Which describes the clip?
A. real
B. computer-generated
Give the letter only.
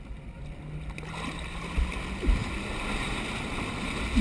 A